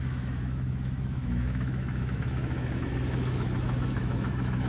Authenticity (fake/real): fake